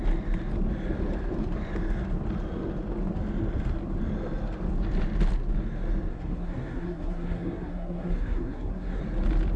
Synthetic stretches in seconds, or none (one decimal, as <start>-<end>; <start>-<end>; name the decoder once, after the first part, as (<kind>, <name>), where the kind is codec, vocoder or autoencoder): 6.1-9.0 (codec, SNAC)